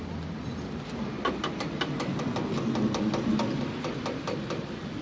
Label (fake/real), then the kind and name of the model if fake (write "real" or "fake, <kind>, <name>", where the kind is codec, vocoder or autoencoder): real